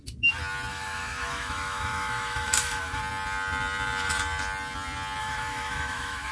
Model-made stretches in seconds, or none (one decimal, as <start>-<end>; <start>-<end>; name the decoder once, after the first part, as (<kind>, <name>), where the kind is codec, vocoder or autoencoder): 0.7-3.0 (autoencoder, DAC-VAE); 5.2-6.3